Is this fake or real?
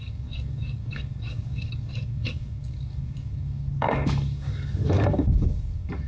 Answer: fake